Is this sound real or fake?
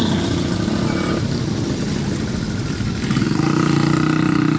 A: real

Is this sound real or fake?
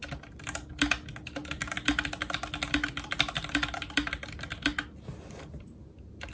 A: real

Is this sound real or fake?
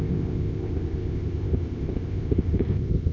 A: fake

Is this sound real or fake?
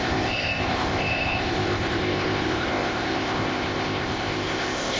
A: fake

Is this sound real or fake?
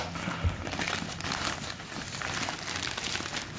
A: real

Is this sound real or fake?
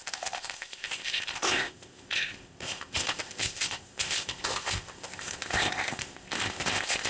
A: fake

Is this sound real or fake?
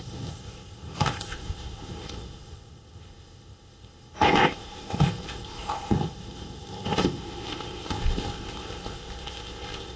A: fake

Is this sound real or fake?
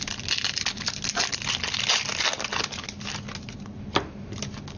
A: real